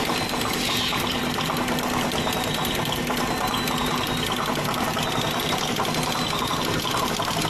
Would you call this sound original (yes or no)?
yes